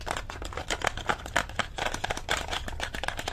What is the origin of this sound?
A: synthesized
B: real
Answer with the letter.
B